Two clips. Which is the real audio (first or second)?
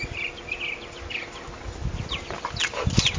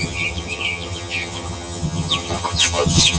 first